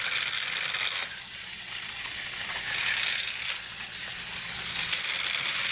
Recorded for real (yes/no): yes